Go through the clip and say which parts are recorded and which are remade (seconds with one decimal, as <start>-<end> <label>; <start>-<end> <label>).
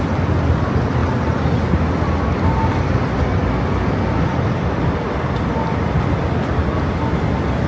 0.0-7.7 recorded